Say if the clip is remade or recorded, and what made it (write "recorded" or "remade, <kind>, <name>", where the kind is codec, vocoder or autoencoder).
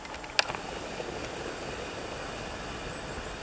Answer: recorded